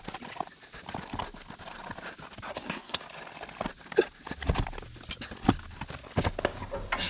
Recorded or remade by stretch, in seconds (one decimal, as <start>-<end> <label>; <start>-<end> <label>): 0.0-2.5 recorded; 2.5-3.0 remade; 3.0-7.1 recorded